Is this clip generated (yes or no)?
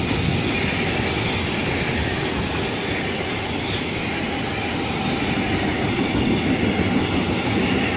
no